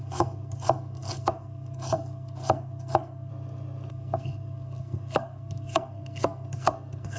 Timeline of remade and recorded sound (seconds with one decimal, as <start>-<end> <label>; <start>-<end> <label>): 0.0-3.3 remade; 3.3-3.9 recorded; 3.9-7.2 remade